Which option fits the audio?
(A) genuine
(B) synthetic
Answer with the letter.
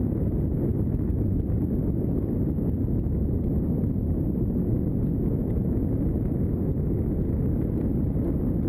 A